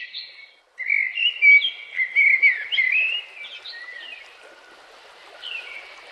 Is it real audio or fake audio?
real